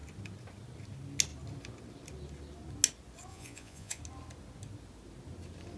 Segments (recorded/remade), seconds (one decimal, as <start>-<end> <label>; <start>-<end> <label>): 0.0-3.3 recorded; 3.3-4.0 remade; 4.0-5.8 recorded